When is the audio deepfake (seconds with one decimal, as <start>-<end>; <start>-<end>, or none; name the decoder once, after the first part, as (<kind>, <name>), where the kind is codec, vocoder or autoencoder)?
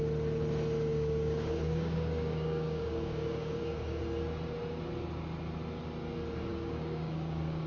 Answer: 0.9-4.0 (codec, DAC); 6.5-7.7